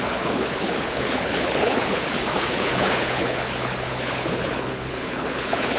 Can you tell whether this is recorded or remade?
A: remade